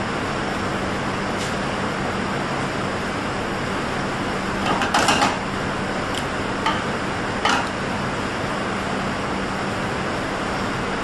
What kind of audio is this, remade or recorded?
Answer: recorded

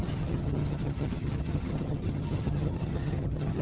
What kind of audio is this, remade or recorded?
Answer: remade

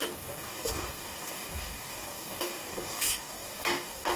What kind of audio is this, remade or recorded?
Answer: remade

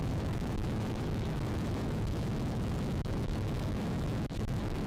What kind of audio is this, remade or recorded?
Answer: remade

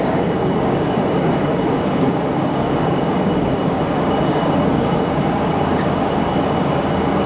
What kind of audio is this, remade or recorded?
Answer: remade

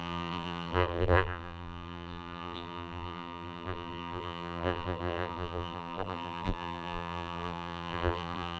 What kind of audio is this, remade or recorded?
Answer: remade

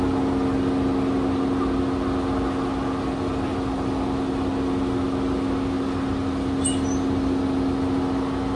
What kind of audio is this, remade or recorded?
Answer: recorded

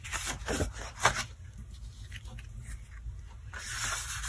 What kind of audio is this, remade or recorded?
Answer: recorded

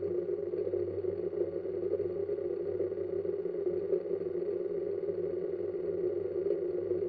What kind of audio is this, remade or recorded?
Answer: recorded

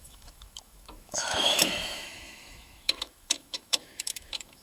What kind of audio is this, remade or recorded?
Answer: remade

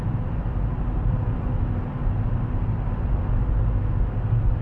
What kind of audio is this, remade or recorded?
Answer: remade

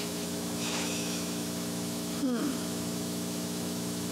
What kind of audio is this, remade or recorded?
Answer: remade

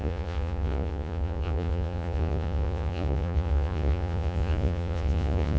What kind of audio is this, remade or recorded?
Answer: remade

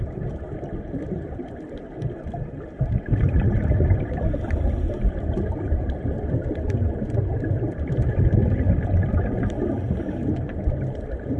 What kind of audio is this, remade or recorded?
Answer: remade